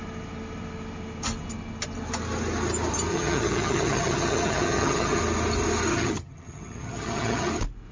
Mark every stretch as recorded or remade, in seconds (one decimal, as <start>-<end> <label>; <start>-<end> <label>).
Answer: 0.0-3.1 recorded; 3.1-5.2 remade; 5.2-5.9 recorded; 5.9-7.5 remade; 7.5-7.9 recorded